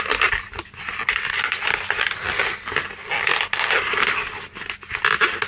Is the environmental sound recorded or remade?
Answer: recorded